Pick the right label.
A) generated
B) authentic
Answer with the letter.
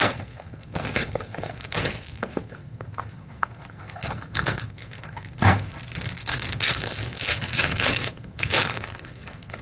A